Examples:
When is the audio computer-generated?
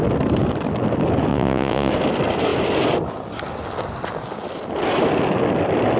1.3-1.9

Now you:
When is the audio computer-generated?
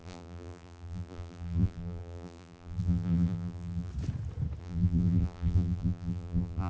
0.0-3.9; 4.6-6.7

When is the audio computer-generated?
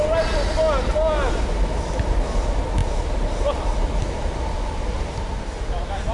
none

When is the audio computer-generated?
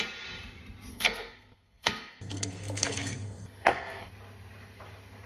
0.9-4.1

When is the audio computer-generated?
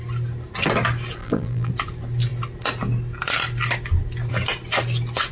1.2-1.7